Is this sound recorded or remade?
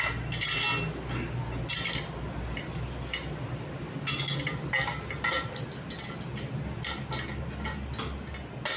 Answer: recorded